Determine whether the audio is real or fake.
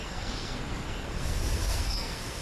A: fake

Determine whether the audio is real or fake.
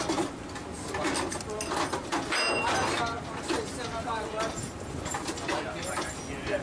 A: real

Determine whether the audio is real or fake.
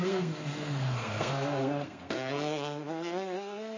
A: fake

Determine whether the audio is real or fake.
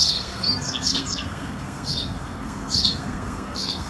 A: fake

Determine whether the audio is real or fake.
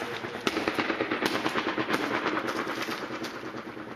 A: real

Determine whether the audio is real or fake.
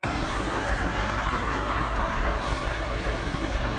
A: fake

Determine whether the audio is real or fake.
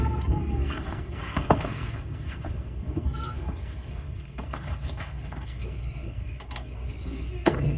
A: fake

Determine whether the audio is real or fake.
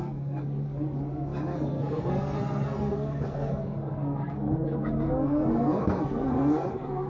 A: fake